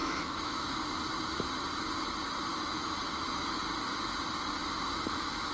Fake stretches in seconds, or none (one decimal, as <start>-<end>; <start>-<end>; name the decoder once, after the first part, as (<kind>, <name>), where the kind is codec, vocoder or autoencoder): 0.0-0.9 (autoencoder, DAC-VAE); 2.5-3.6; 4.6-5.5

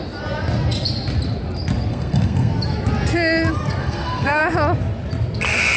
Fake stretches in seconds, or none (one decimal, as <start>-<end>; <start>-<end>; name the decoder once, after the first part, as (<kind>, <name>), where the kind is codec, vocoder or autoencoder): 1.9-2.5 (codec, SNAC); 3.8-4.4

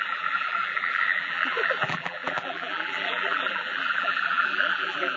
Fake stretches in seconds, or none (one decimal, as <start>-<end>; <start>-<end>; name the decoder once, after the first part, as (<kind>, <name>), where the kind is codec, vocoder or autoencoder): 0.0-5.2 (vocoder, BigVGAN v2)

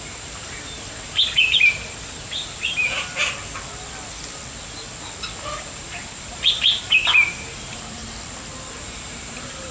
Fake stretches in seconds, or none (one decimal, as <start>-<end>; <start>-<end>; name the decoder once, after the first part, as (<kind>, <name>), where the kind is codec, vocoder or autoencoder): 0.0-3.1 (vocoder, BigVGAN v2); 5.6-8.0; 8.8-9.7

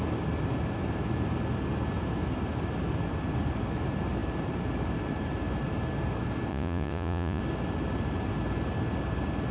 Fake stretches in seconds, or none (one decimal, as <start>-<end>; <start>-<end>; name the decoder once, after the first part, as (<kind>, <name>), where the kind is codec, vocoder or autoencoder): 6.5-7.4 (vocoder, Vocos)

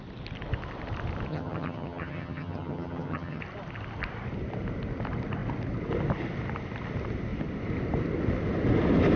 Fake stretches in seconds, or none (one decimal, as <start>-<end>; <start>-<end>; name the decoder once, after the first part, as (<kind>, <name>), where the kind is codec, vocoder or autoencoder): 1.3-3.4 (vocoder, HiFi-GAN)

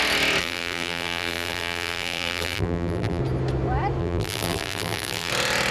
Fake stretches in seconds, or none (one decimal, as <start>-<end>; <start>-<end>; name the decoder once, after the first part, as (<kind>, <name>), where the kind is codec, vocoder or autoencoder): 0.4-3.2 (vocoder, BigVGAN v2); 4.0-5.3

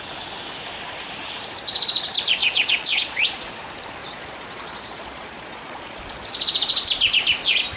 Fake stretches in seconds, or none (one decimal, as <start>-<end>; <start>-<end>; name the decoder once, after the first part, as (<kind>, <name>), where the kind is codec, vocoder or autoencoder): 2.4-3.6 (vocoder, Vocos); 4.0-6.0